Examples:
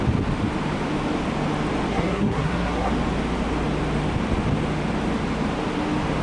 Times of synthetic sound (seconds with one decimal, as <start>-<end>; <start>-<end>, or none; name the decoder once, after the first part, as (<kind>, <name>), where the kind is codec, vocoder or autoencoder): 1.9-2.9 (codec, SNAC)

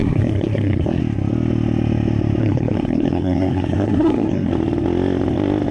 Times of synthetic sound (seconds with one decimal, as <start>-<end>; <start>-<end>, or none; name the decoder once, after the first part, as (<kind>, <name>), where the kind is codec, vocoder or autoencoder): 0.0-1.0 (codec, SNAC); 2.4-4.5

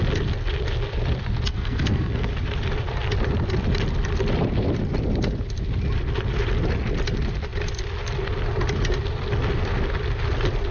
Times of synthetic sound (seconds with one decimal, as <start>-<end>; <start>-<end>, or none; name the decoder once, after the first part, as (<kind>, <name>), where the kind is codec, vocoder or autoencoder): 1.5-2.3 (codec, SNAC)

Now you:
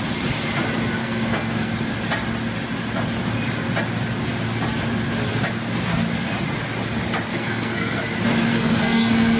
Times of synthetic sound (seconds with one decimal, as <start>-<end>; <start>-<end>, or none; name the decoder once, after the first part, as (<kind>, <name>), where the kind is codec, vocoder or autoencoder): 1.0-1.7 (codec, SNAC); 7.3-8.0; 8.5-9.4

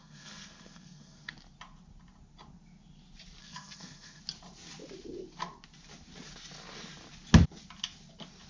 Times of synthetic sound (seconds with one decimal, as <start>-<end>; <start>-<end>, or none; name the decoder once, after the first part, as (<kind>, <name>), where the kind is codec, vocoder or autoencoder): 0.0-1.3 (codec, SNAC); 3.4-4.2

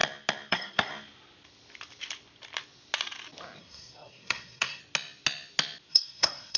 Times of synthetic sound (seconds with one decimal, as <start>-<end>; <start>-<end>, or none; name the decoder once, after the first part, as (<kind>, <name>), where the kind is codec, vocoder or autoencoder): 0.5-0.9 (codec, SNAC); 3.6-4.8; 5.9-6.6

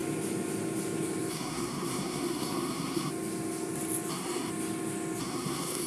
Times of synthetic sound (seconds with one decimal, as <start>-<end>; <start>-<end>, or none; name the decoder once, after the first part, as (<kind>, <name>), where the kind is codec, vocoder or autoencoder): 1.3-3.1 (codec, SNAC); 4.1-4.5; 5.2-5.9

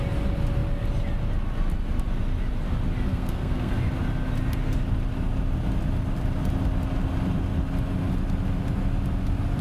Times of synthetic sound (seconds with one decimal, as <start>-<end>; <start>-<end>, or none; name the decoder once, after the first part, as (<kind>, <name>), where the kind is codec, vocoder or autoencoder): 3.1-3.7 (codec, SNAC)